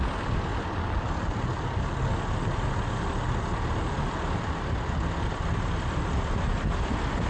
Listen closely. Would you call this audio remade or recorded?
recorded